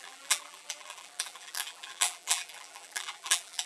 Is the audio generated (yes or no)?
yes